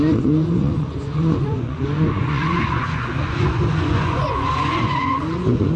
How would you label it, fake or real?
fake